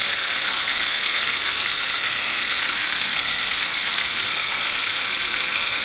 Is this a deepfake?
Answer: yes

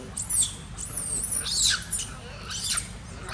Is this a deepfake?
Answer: no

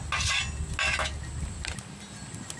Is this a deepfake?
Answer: no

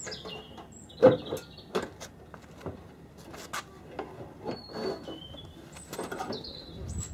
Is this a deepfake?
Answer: no